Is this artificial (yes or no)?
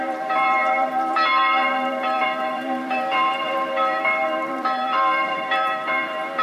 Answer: yes